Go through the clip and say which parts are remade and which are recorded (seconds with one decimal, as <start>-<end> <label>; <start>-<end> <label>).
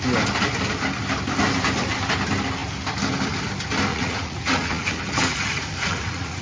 0.0-3.9 recorded; 3.9-6.4 remade